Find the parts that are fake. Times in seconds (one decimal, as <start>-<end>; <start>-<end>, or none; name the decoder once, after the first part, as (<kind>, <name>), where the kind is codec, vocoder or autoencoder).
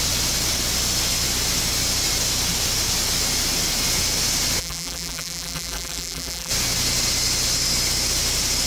4.6-6.5 (vocoder, BigVGAN v2)